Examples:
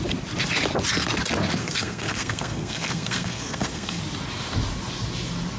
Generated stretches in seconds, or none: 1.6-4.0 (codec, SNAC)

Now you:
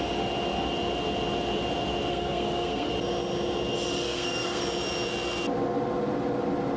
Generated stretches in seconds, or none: 2.1-2.9 (codec, SNAC); 4.0-4.6

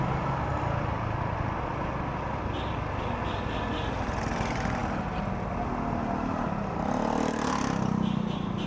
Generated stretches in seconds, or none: none

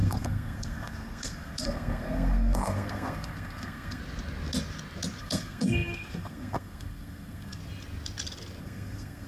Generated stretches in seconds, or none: 0.0-4.0 (codec, SNAC); 5.2-7.6; 8.6-9.3

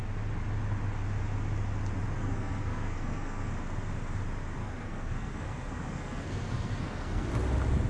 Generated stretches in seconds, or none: 2.2-3.5 (codec, SNAC); 4.6-7.3